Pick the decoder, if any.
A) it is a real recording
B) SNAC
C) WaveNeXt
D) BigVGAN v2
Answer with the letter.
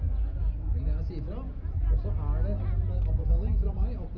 A